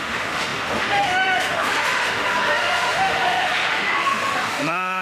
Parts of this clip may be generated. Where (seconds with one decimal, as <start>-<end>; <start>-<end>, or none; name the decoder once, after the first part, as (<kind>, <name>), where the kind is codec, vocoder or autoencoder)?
0.0-5.0 (autoencoder, DAC-VAE)